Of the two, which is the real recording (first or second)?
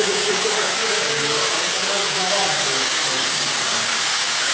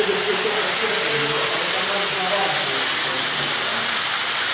second